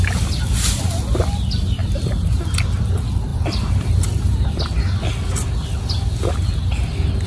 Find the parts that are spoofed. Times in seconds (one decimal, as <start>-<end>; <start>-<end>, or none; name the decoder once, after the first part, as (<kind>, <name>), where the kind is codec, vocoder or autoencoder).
1.8-2.4 (vocoder, BigVGAN v2); 3.3-4.6